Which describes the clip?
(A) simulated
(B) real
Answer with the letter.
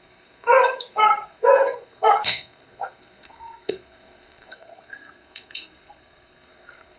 A